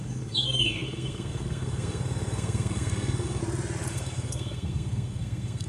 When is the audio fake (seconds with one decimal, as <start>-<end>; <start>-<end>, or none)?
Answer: 0.0-3.4; 3.9-5.7